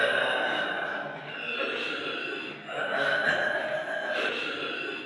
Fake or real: real